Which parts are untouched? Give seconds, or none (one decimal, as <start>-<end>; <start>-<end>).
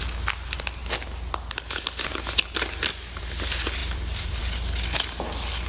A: 0.0-3.8; 4.4-5.7